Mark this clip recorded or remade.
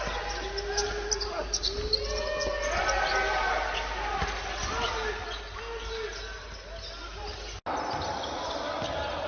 recorded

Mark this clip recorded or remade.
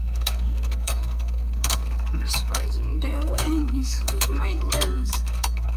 remade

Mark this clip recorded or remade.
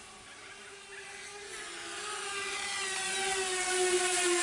recorded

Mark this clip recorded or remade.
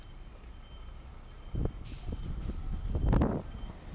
recorded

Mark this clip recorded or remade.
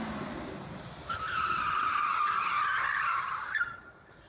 recorded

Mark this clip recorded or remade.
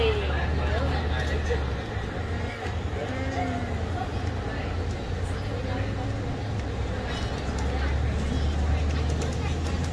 recorded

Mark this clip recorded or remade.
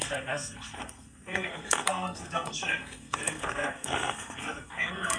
remade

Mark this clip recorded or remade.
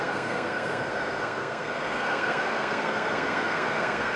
remade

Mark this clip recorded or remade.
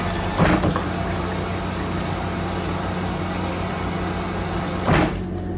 recorded